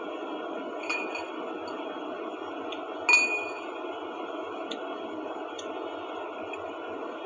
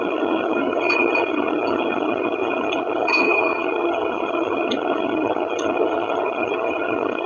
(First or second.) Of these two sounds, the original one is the first